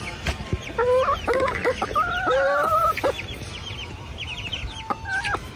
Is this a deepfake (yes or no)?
no